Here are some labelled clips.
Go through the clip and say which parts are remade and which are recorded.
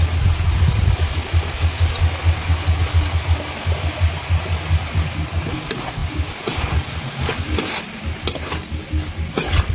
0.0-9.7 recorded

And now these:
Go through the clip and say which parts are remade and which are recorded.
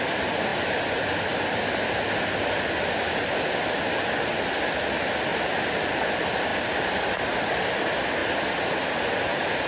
0.0-9.7 recorded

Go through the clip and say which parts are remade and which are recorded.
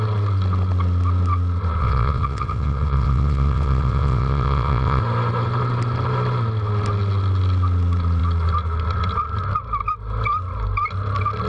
0.0-1.8 recorded; 1.8-5.0 remade; 5.0-11.5 recorded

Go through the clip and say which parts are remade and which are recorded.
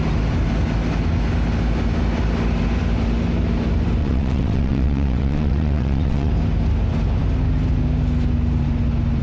0.0-4.0 recorded; 4.0-6.3 remade; 6.3-9.2 recorded